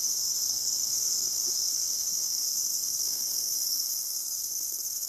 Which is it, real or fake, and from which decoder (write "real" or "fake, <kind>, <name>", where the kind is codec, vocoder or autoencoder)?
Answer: fake, codec, SNAC